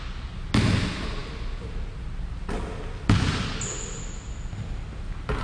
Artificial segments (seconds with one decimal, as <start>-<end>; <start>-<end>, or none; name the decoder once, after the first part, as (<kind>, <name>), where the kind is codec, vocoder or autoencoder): none